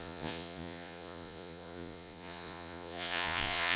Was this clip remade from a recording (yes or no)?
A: yes